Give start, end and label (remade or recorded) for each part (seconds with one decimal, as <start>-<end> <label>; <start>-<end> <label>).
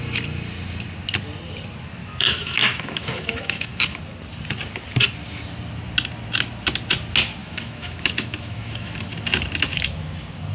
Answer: 0.0-2.0 recorded; 2.0-4.0 remade; 4.0-7.4 recorded; 7.4-9.1 remade; 9.1-10.5 recorded